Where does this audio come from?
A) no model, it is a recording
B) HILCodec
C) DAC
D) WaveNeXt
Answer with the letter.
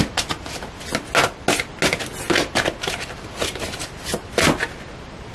A